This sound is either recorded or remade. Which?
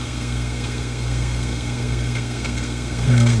remade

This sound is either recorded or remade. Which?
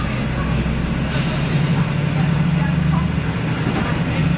recorded